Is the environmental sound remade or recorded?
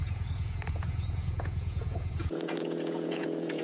remade